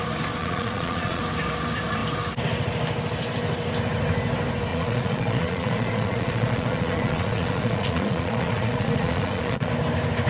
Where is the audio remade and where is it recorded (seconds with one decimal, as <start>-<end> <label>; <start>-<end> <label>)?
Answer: 0.0-0.4 recorded; 0.4-1.2 remade; 1.2-4.7 recorded; 4.7-9.7 remade; 9.7-10.3 recorded